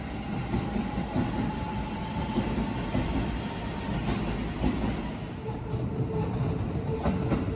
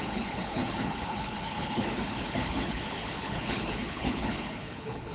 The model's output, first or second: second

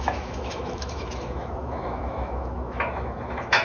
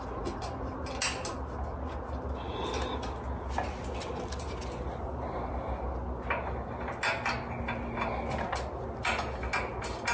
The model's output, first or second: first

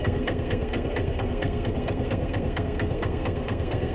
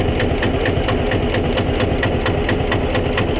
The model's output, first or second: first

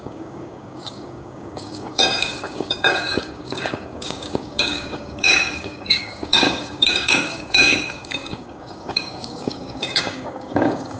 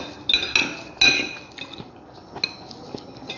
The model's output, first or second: first